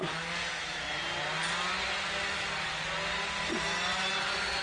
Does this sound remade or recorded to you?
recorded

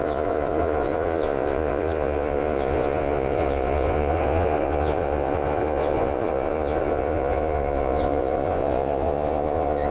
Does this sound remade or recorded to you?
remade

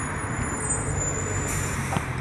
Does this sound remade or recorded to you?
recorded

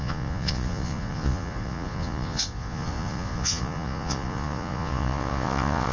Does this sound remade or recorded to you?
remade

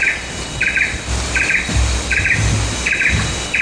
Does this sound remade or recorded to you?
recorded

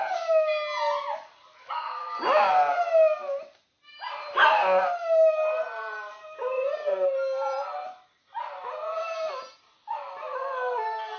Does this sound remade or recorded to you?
recorded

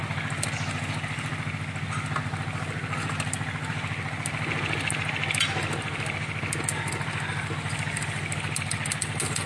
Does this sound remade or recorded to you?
recorded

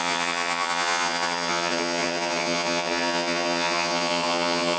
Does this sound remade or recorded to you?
remade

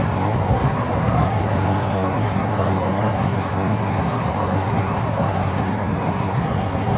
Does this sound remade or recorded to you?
remade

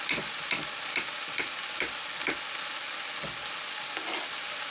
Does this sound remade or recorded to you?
recorded